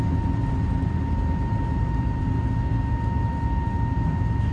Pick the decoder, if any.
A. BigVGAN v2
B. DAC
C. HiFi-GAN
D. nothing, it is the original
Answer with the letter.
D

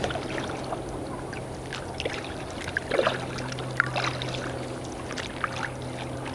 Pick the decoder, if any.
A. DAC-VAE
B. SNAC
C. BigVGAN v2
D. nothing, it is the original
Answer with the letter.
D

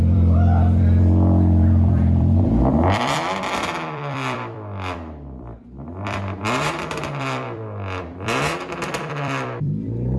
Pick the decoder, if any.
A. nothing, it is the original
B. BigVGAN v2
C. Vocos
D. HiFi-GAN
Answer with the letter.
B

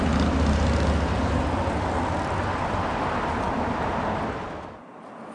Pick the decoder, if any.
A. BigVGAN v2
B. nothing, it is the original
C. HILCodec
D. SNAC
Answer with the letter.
B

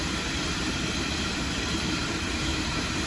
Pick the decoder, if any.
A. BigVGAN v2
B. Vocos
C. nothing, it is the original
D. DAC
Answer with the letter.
A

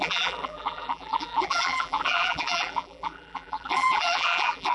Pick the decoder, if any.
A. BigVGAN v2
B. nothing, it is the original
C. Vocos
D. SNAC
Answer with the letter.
A